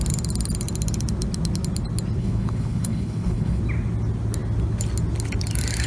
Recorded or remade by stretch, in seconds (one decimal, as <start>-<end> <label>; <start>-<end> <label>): 0.0-2.2 recorded; 2.2-3.6 remade; 3.6-5.9 recorded